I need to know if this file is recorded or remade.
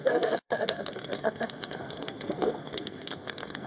remade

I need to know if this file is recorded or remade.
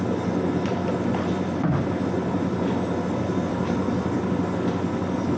recorded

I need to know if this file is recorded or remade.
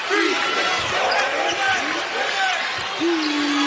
recorded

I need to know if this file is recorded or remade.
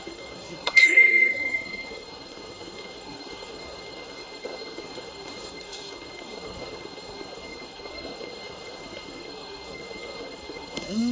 remade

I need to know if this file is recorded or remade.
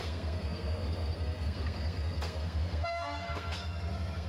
remade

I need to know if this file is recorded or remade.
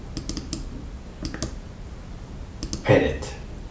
recorded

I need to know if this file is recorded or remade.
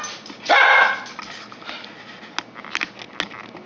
recorded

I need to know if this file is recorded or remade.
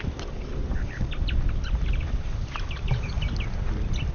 recorded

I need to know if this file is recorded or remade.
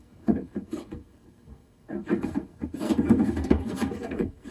remade